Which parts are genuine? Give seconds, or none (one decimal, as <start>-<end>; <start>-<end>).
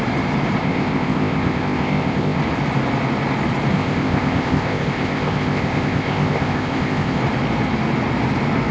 0.0-0.6; 2.4-3.7; 7.2-8.7